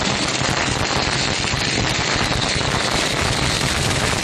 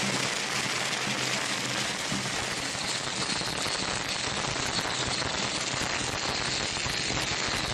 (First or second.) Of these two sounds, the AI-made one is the first